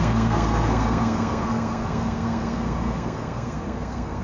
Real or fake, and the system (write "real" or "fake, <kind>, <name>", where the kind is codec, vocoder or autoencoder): fake, codec, SNAC